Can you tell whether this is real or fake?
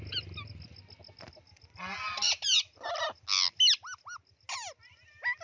real